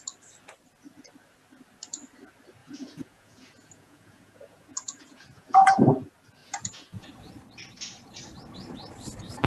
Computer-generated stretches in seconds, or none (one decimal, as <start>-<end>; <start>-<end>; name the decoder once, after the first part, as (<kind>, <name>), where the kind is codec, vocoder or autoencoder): 2.6-5.9 (vocoder, Vocos); 6.4-7.1